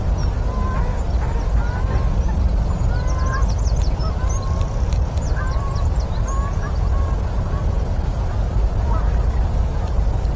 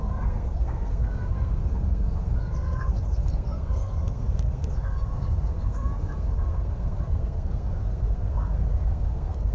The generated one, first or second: second